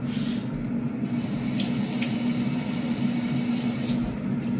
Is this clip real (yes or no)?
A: yes